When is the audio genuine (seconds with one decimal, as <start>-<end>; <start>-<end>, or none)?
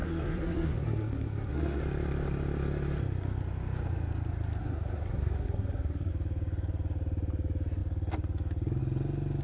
1.8-4.6; 6.1-9.4